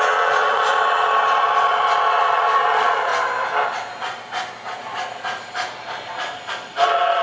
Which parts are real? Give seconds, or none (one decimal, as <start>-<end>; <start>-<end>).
3.1-6.5